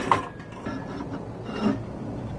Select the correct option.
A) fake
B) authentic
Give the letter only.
B